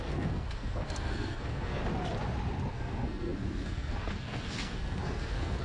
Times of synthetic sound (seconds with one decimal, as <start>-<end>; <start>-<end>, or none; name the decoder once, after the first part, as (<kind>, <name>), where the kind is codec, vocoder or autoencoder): 0.0-1.8 (codec, SNAC); 2.7-5.6